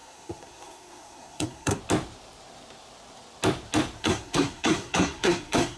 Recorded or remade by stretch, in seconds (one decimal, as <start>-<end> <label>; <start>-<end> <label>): 0.0-1.8 remade; 1.8-4.0 recorded; 4.0-5.8 remade